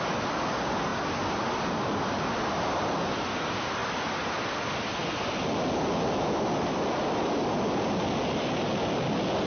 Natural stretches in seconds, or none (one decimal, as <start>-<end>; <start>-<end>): 0.0-9.5